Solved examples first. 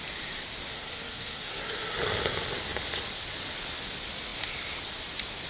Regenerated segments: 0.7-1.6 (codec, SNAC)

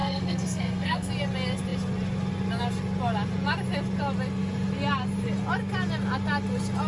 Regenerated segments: 0.0-1.1 (codec, SNAC)